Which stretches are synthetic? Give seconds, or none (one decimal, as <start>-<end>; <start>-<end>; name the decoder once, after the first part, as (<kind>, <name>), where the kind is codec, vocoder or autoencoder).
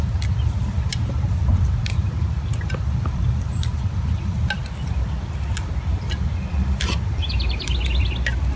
none